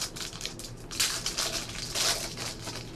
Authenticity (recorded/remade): recorded